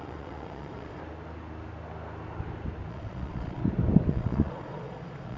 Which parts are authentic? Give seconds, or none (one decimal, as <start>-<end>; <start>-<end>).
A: 1.0-2.9; 3.6-4.1